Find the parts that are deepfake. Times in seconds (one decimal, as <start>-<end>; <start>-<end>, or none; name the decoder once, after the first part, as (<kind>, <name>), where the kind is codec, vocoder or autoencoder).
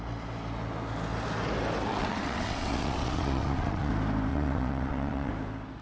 1.9-3.9 (vocoder, WaveNeXt); 4.3-5.3